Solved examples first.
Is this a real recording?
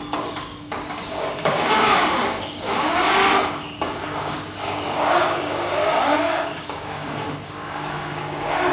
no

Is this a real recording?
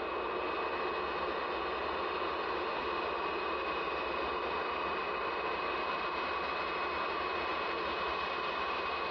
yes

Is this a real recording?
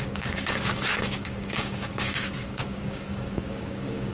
no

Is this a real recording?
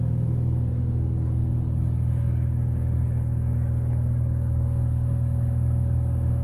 no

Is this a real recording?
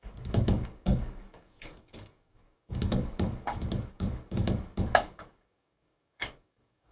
no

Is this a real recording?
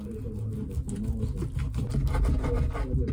yes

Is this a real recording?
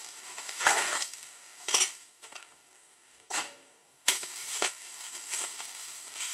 no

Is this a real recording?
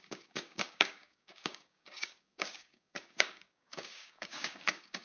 no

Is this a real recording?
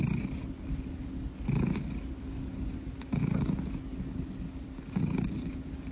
yes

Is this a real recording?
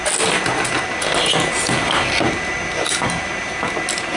yes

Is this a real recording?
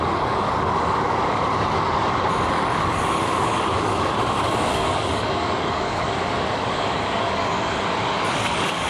no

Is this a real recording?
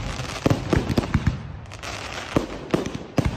yes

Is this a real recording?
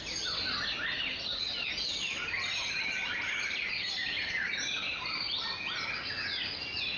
yes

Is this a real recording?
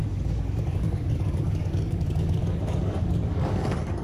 no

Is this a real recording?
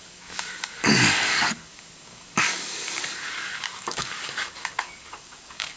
no